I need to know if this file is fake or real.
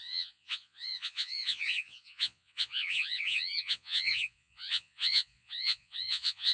fake